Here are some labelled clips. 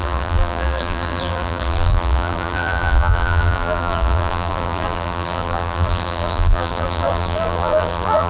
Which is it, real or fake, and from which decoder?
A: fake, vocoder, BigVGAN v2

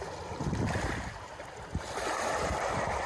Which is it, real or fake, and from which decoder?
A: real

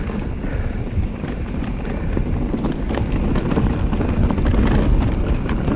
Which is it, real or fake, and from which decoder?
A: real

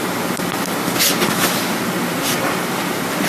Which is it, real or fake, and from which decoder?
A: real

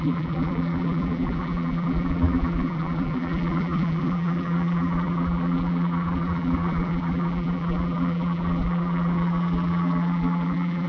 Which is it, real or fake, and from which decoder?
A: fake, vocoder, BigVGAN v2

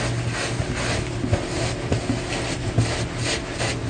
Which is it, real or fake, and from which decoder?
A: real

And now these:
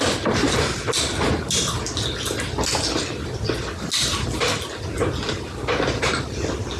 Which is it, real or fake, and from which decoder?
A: real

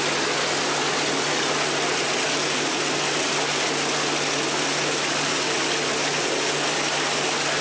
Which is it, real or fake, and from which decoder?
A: real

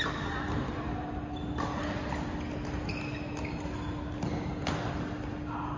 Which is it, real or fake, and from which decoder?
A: real